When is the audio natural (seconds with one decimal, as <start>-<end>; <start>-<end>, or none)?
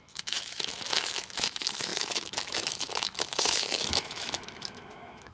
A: none